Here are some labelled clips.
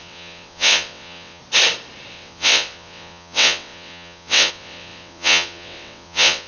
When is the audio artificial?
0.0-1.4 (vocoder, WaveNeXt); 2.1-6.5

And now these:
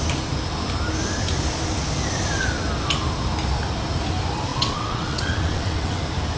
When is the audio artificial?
4.5-6.0 (vocoder, WaveNeXt)

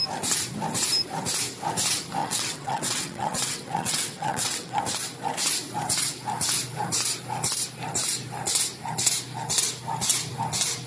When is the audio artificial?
2.2-4.8 (vocoder, WaveNeXt)

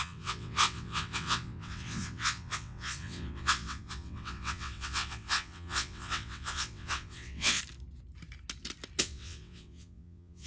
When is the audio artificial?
0.0-7.6 (vocoder, WaveNeXt); 9.0-10.5